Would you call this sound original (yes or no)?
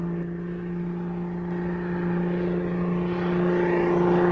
yes